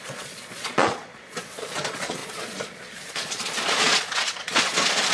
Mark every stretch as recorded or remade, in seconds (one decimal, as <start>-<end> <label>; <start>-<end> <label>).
0.0-5.1 remade